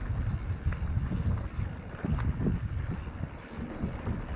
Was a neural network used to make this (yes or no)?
no